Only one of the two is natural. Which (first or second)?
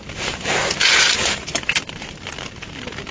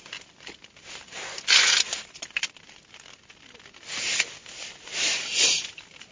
second